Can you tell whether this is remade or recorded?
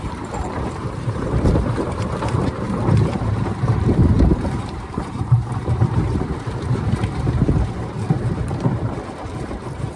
remade